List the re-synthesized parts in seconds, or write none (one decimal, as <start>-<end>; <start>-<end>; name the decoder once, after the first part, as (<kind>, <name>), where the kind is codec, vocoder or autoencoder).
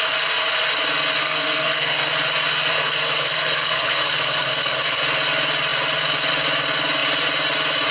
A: 1.2-2.1 (codec, SNAC); 2.7-5.0